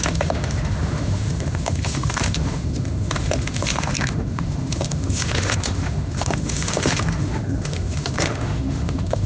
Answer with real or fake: fake